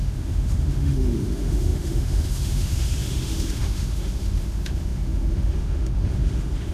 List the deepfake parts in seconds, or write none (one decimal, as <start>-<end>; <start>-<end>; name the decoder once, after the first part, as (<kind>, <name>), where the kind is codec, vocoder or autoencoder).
0.0-6.7 (autoencoder, DAC-VAE)